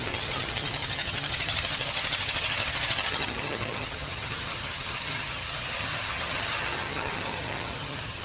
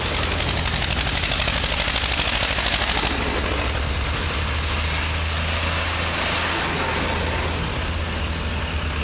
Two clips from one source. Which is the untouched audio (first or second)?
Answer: second